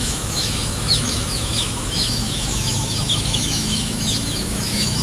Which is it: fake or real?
fake